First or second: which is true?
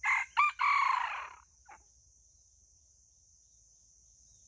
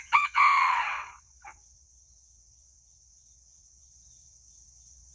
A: first